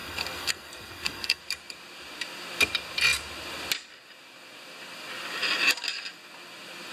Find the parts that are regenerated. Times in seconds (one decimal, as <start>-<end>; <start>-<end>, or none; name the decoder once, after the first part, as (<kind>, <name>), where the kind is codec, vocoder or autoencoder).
0.0-1.4 (codec, SNAC)